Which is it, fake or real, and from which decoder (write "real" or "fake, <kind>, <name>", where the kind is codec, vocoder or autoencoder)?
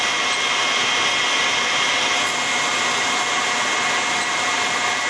real